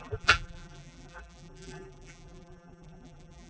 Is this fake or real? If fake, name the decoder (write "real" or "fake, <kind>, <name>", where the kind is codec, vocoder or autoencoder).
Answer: fake, vocoder, BigVGAN v2